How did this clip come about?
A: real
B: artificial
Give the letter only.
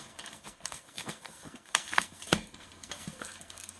B